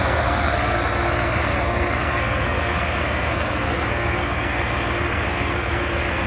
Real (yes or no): no